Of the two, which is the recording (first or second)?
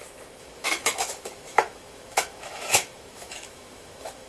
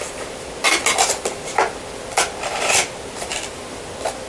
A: second